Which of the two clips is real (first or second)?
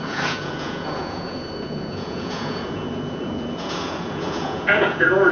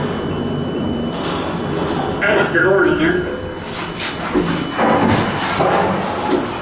second